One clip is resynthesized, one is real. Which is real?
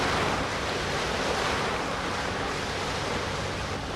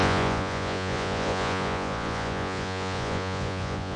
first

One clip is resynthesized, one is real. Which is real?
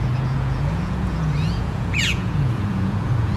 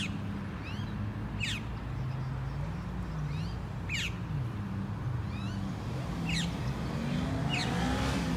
second